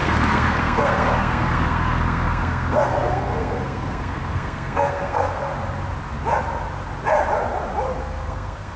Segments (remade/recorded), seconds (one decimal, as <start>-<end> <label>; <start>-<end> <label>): 0.0-5.5 remade; 5.5-8.0 recorded; 8.0-8.8 remade